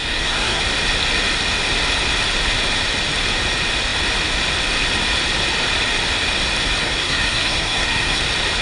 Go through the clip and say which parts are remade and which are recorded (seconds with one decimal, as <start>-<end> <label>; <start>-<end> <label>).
0.0-0.6 remade; 0.6-6.8 recorded; 6.8-8.2 remade; 8.2-8.6 recorded